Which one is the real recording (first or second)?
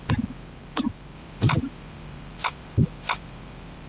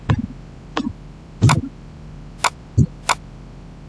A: second